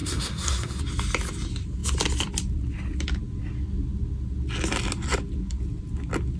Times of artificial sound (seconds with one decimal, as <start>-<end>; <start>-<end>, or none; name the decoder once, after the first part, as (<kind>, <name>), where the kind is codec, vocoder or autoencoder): 0.0-0.8 (codec, SNAC)

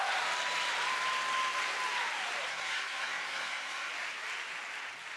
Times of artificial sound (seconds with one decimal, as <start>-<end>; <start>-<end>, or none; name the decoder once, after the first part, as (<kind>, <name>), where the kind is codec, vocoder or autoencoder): 2.5-3.9 (codec, SNAC)

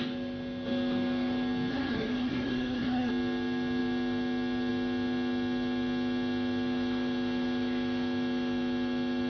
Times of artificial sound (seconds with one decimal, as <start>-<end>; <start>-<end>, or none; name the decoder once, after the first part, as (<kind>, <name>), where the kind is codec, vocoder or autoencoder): 1.7-3.1 (codec, SNAC)

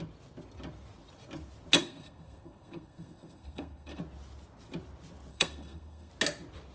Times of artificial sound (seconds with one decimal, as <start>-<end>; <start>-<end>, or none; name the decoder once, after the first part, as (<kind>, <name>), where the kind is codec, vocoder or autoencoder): 1.8-4.0 (codec, SNAC); 5.3-6.1

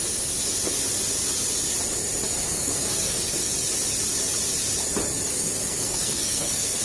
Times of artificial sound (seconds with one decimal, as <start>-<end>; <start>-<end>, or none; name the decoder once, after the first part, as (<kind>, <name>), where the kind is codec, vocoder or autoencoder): 2.4-3.5 (codec, SNAC); 5.3-6.8

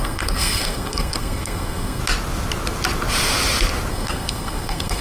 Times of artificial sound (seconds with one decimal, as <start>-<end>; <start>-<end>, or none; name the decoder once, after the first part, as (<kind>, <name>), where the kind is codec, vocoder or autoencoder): 0.0-2.0 (codec, SNAC); 3.9-5.0